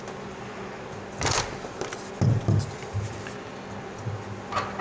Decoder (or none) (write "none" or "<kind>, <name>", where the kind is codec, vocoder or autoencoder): none